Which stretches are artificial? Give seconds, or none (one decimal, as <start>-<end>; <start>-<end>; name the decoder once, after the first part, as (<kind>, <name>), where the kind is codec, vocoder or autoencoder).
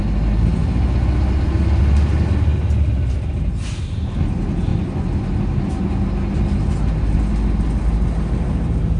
none